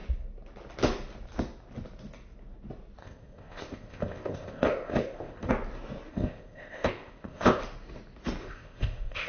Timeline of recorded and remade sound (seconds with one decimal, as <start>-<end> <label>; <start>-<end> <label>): 0.0-3.0 recorded; 3.0-5.5 remade; 5.5-6.1 recorded; 6.1-7.6 remade; 7.6-8.4 recorded; 8.4-9.3 remade